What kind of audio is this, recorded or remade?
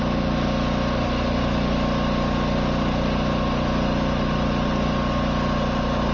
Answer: recorded